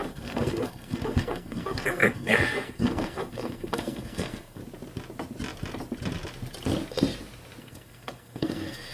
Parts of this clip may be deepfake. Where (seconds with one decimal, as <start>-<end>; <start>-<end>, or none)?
0.0-4.6; 7.6-8.9